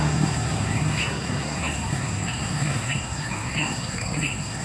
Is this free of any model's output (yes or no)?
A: no